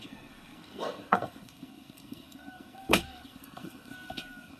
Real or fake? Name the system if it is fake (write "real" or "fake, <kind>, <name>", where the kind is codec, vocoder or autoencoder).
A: fake, codec, SNAC